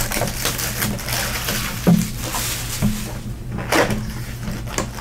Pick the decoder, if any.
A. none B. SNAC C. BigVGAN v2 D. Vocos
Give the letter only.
A